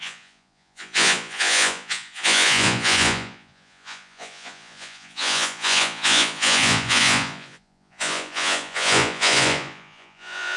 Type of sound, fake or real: fake